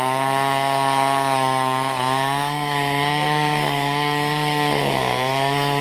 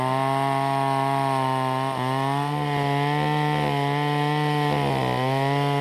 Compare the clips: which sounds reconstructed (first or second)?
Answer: first